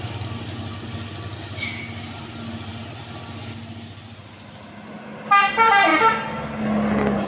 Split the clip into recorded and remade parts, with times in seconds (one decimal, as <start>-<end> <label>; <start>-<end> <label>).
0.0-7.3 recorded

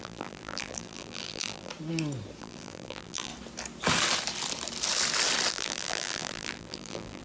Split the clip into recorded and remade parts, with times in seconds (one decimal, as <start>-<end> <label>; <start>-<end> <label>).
0.0-1.7 remade; 1.7-2.4 recorded; 2.4-3.3 remade; 3.3-5.5 recorded; 5.5-7.2 remade

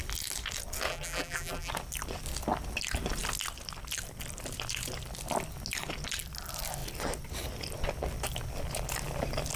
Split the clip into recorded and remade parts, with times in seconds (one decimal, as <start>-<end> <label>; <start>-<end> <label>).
0.0-0.9 recorded; 0.9-1.7 remade; 1.7-9.6 recorded